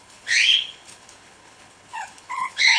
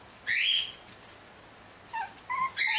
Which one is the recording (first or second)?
second